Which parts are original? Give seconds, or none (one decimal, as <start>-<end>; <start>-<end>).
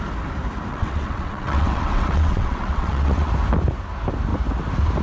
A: 0.0-0.7; 3.3-5.0